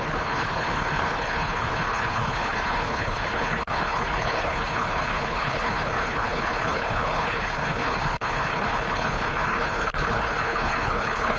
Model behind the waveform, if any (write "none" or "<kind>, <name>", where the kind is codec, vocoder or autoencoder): codec, HILCodec